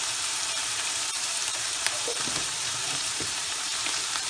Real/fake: fake